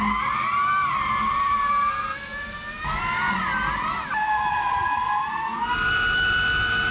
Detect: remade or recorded recorded